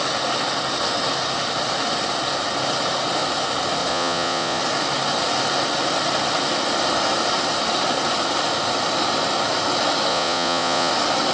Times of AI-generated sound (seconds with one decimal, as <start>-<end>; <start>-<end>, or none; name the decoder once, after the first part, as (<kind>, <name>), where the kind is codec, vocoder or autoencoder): 3.9-4.6 (vocoder, Vocos); 10.1-10.9